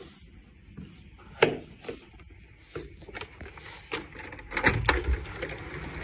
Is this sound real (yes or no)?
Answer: yes